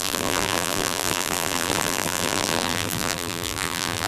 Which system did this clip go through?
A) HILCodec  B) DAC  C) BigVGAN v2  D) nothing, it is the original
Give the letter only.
C